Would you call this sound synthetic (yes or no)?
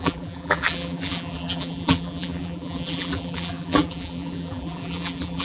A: yes